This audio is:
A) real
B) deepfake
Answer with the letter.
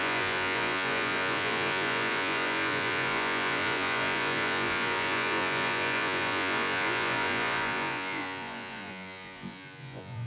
B